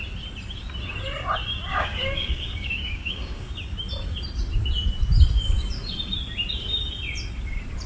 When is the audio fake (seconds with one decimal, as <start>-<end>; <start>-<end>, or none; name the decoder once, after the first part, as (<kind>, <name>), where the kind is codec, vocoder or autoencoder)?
1.7-3.5 (codec, DAC)